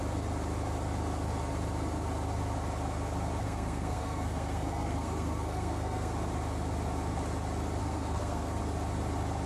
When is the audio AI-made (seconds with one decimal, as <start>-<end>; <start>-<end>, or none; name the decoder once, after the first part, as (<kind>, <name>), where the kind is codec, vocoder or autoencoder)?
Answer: 3.4-6.1 (codec, SNAC); 7.8-8.6